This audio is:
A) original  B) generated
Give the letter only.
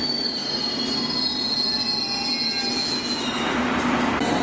A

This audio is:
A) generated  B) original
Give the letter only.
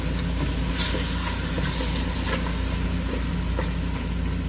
B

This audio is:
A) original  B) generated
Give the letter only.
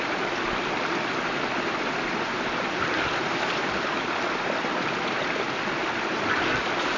A